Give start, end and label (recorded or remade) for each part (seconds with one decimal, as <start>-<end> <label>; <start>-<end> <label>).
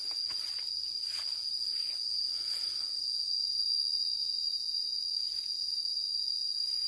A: 0.0-6.9 recorded